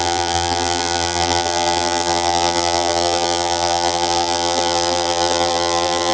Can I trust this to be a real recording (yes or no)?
no